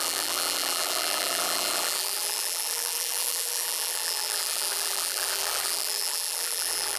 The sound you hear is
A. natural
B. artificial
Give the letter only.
B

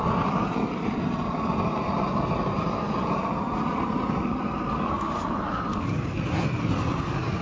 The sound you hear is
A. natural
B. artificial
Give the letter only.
A